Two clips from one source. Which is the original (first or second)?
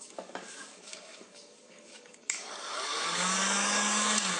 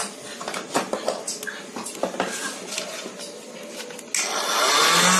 second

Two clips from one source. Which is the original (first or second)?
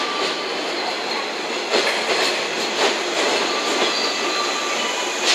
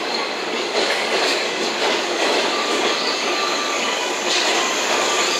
first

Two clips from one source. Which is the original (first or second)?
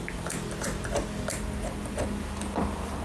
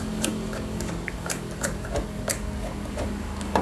first